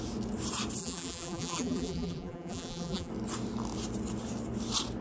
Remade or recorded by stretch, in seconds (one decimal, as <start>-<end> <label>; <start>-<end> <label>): 0.0-0.8 recorded; 0.8-3.1 remade; 3.1-5.0 recorded